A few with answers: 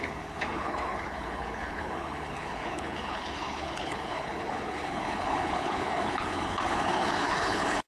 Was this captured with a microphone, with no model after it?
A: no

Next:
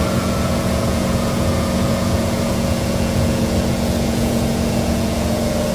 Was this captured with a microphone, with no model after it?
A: no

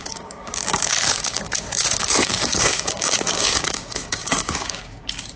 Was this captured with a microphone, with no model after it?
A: no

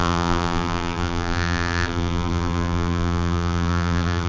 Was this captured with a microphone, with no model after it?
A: no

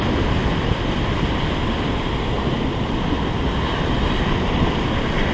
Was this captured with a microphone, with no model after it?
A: yes